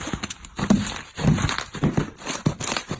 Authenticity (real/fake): real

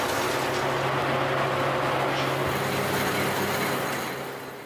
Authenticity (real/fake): real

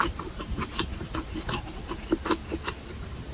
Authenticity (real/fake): real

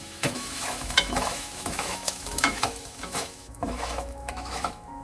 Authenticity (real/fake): fake